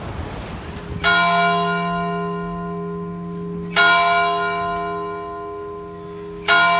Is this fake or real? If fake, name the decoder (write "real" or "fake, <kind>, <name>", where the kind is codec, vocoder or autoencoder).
real